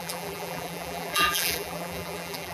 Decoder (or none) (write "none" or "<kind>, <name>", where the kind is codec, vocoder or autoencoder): vocoder, BigVGAN v2